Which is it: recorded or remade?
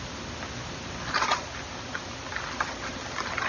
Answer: recorded